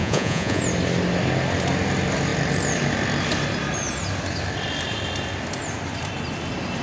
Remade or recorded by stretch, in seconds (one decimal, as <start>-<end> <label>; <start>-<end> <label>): 0.0-0.6 remade; 0.6-6.8 recorded